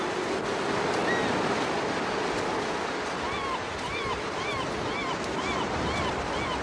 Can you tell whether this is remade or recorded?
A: recorded